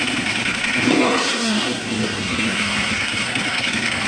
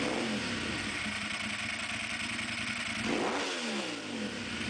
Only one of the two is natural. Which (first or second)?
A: second